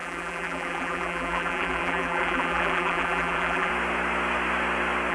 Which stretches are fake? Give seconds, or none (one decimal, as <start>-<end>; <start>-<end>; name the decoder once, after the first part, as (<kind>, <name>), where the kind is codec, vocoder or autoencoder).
0.0-3.7 (vocoder, BigVGAN v2)